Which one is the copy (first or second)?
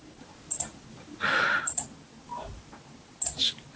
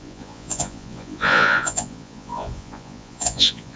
second